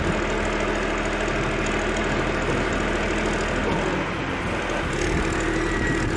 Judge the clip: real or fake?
real